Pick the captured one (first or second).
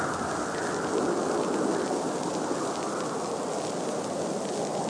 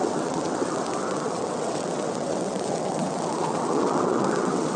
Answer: first